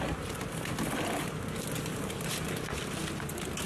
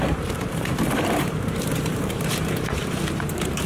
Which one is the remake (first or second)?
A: second